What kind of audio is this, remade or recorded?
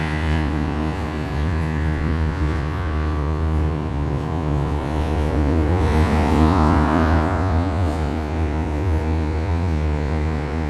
remade